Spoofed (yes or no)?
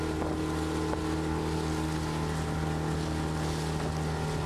no